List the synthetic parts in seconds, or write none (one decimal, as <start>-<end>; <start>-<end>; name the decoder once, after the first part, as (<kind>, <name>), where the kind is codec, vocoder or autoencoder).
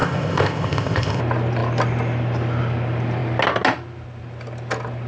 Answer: 0.0-1.2 (codec, ZipCodec)